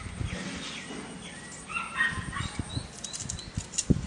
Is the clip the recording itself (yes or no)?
yes